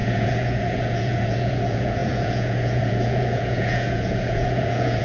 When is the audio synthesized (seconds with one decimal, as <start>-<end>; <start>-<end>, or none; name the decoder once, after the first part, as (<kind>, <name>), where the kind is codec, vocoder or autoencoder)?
0.0-5.0 (vocoder, Vocos)